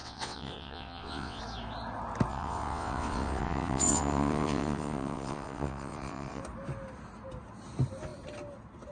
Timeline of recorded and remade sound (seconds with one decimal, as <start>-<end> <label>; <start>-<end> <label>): 0.0-1.4 remade; 1.4-2.3 recorded; 2.3-6.4 remade; 6.4-8.9 recorded